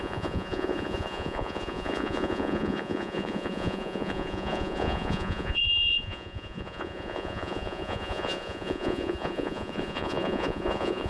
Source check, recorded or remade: remade